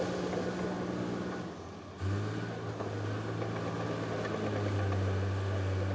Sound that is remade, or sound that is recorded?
recorded